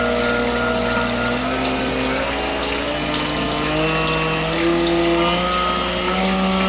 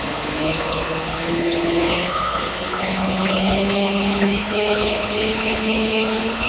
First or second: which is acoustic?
first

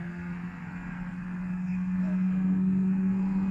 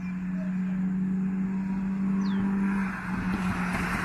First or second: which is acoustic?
second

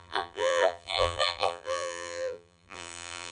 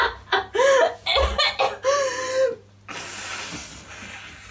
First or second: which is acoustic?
second